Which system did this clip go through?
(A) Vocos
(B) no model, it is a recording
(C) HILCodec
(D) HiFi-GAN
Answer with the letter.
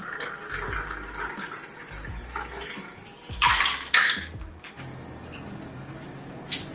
B